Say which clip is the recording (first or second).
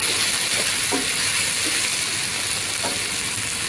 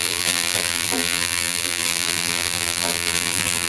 first